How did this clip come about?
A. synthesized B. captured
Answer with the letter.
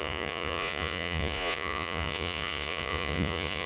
A